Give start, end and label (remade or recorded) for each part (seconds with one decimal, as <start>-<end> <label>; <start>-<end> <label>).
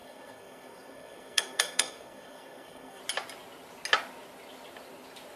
0.0-3.0 remade; 3.0-5.4 recorded